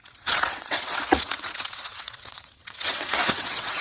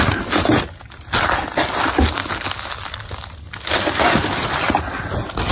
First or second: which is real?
second